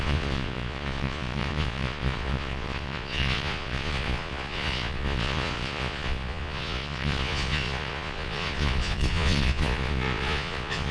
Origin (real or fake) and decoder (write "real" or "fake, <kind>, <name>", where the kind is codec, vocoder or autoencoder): fake, vocoder, Vocos